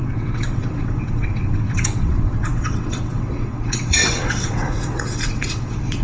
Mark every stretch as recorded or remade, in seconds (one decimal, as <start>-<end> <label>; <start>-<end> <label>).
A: 0.0-6.0 remade